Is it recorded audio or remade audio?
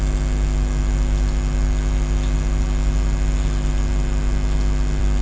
recorded